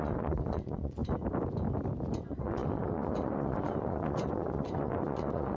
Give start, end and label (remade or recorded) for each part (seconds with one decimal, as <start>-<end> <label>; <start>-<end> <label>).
0.0-1.0 remade; 1.0-2.2 recorded; 2.2-5.6 remade